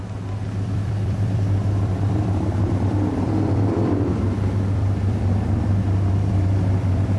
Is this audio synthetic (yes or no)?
yes